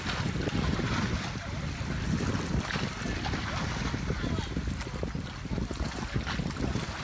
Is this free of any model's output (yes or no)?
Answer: yes